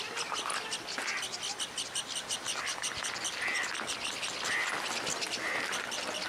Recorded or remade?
recorded